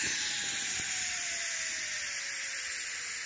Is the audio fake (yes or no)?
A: no